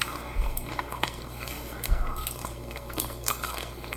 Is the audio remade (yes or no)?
yes